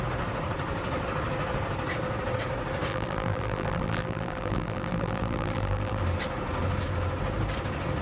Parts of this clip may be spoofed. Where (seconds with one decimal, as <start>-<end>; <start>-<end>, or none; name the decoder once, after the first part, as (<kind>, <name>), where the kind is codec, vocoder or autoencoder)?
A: 2.9-6.0 (vocoder, BigVGAN v2)